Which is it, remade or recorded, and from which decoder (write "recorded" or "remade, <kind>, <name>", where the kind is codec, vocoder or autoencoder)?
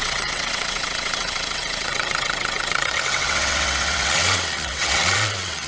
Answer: remade, vocoder, WaveNeXt